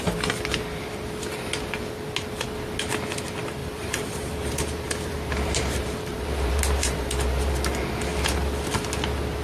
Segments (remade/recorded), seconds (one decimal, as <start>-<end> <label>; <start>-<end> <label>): 0.0-3.6 recorded; 3.6-7.5 remade; 7.5-9.4 recorded